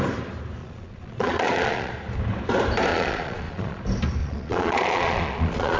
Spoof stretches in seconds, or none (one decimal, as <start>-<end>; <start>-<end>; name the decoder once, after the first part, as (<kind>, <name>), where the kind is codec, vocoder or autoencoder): 0.6-1.9 (vocoder, Vocos); 2.9-3.8; 4.2-5.8